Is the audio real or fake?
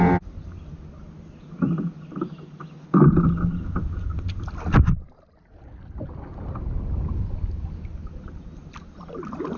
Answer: real